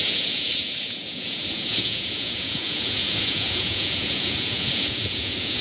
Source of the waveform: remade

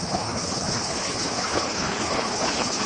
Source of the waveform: remade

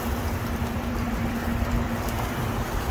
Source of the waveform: remade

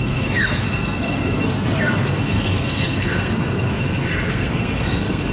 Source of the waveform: remade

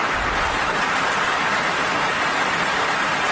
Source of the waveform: recorded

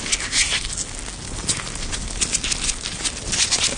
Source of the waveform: recorded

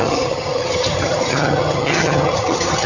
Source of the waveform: remade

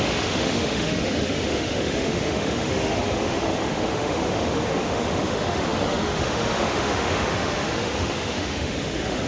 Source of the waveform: remade